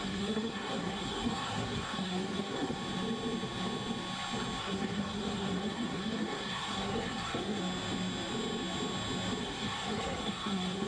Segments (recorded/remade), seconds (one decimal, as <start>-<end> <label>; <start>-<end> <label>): 0.0-2.8 remade; 2.8-4.6 recorded; 4.6-7.6 remade; 7.6-9.4 recorded; 9.4-10.9 remade

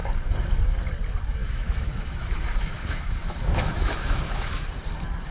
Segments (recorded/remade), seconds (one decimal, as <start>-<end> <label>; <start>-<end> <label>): 0.0-1.4 recorded; 1.4-4.6 remade; 4.6-5.3 recorded

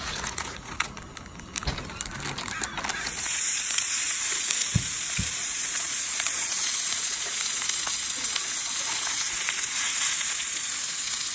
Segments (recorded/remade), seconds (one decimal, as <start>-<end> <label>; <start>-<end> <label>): 0.0-1.0 remade; 1.0-3.0 recorded; 3.0-11.3 remade

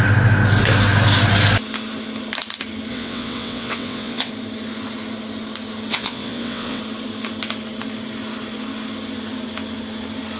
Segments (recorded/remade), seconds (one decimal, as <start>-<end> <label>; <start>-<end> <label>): 0.0-2.9 recorded; 2.9-4.3 remade; 4.3-5.9 recorded; 5.9-6.8 remade; 6.8-10.4 recorded

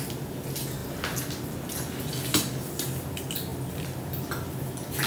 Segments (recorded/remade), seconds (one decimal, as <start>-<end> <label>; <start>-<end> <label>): 0.0-5.1 recorded

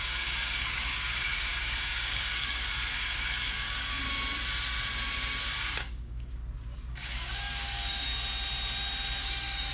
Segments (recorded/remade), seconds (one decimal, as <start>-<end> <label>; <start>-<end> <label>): 0.0-4.0 remade; 4.0-5.6 recorded; 5.6-6.4 remade; 6.4-6.9 recorded; 6.9-8.1 remade; 8.1-9.2 recorded; 9.2-9.7 remade

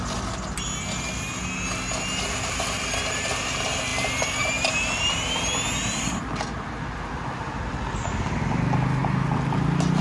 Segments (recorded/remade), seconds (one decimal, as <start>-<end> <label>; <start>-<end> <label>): 0.0-10.0 recorded

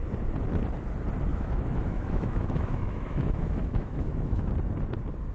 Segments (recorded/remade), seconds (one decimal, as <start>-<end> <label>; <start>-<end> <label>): 0.0-1.3 recorded; 1.3-4.5 remade; 4.5-5.3 recorded